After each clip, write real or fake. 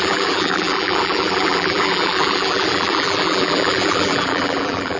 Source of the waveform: fake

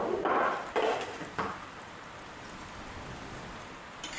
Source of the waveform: fake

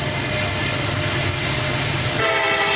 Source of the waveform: real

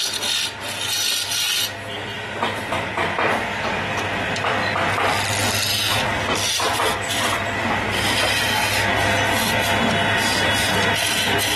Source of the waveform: real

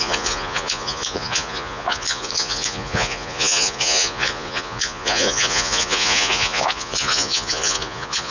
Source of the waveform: fake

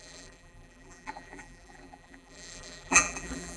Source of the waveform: fake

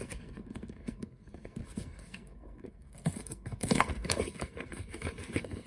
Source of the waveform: fake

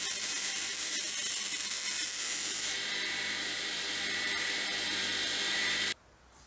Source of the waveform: fake